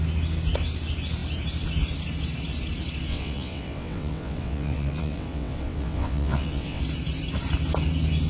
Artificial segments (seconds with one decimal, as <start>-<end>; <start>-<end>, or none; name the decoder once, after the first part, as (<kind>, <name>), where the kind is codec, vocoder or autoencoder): 3.1-6.8 (vocoder, WaveNeXt)